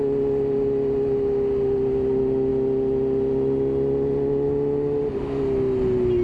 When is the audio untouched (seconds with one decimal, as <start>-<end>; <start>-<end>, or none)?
0.0-6.2